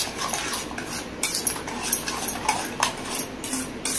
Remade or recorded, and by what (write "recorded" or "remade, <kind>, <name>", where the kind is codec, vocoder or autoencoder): recorded